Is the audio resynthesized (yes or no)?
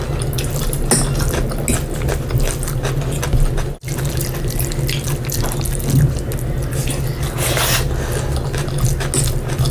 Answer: no